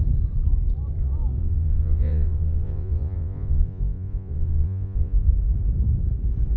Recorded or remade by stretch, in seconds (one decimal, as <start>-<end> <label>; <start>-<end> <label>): 0.0-1.4 recorded; 1.4-5.3 remade; 5.3-6.6 recorded